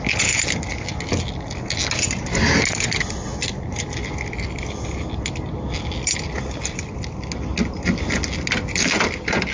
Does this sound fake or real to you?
real